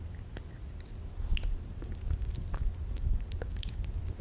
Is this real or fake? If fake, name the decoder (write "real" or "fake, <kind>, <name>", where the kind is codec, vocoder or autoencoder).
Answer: real